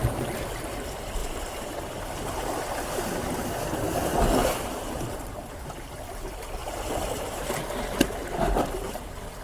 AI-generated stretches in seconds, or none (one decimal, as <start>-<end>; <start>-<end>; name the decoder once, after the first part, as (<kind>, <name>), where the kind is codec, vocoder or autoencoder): 4.4-5.3 (vocoder, BigVGAN v2)